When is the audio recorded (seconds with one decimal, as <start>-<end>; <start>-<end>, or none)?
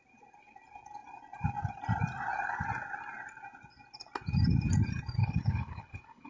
0.0-5.2